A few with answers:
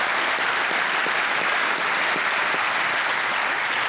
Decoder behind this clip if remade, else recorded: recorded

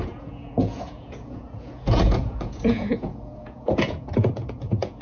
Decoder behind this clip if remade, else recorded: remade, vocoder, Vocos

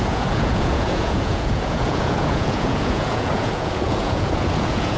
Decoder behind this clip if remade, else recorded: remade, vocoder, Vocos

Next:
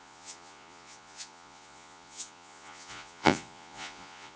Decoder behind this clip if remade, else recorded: remade, vocoder, Vocos